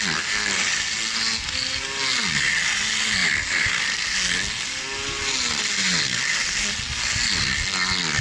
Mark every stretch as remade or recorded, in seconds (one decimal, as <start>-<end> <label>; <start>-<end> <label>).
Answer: 0.0-8.2 recorded

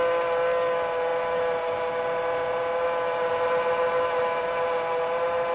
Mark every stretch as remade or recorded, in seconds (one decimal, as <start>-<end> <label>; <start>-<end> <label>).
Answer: 0.0-5.5 recorded